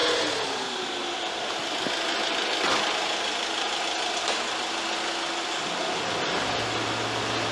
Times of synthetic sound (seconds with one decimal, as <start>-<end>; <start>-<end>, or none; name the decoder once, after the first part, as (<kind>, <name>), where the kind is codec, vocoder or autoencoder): none